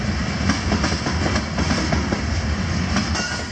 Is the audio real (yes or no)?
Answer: yes